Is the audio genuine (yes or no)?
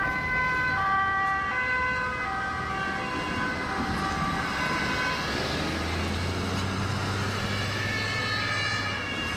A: yes